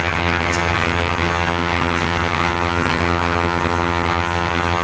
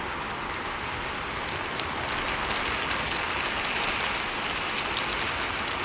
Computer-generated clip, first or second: first